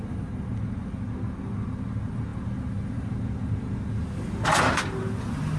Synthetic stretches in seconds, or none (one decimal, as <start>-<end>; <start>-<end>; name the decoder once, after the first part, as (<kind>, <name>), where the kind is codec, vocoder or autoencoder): none